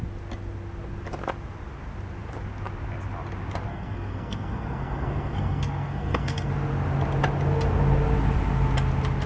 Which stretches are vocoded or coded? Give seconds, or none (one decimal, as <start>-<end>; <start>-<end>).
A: 3.7-6.5